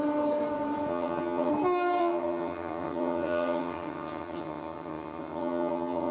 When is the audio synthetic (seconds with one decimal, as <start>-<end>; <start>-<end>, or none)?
0.9-1.5; 2.0-6.1